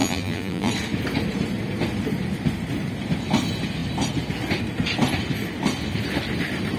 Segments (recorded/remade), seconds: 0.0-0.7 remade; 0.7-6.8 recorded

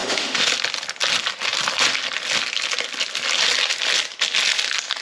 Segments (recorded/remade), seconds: 0.0-0.5 remade; 0.5-5.0 recorded

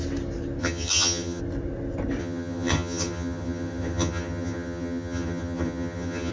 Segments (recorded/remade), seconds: 0.0-0.6 recorded; 0.6-1.4 remade; 1.4-2.2 recorded; 2.2-6.3 remade

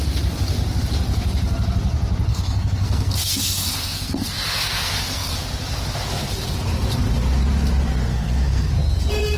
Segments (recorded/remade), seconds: 0.0-2.3 recorded; 2.3-5.3 remade; 5.3-8.1 recorded; 8.1-8.7 remade; 8.7-9.4 recorded

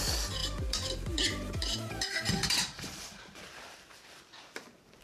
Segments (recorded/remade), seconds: 0.0-0.4 recorded; 0.4-3.4 remade; 3.4-5.0 recorded

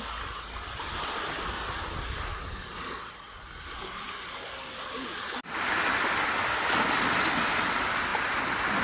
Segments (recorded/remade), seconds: 0.0-8.8 recorded

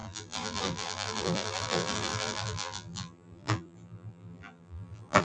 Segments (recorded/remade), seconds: 0.0-5.2 remade

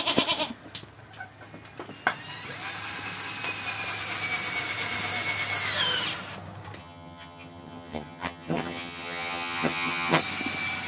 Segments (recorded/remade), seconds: 0.0-6.8 recorded; 6.8-10.2 remade; 10.2-10.9 recorded